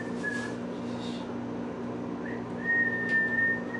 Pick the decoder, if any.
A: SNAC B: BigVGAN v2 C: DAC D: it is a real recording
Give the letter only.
D